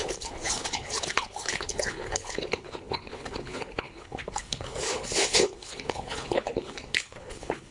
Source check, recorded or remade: remade